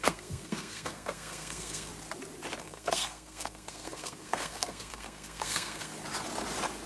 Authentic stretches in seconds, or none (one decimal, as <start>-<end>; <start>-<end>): 1.9-2.6; 5.9-6.9